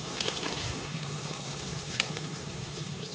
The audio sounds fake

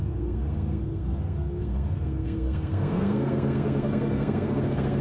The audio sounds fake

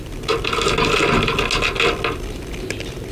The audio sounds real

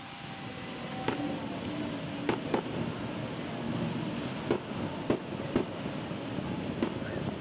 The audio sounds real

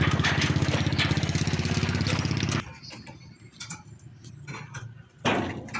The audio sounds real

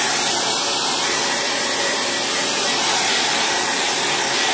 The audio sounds fake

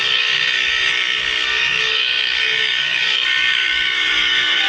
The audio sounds fake